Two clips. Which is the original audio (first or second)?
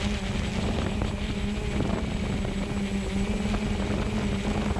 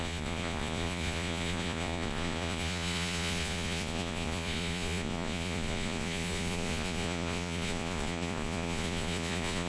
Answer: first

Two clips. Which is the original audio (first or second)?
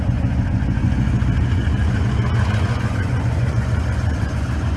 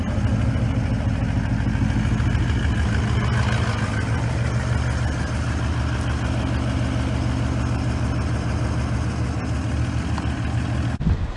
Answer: second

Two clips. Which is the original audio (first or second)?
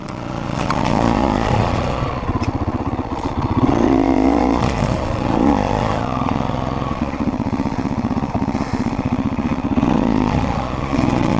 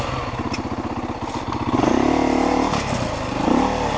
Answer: second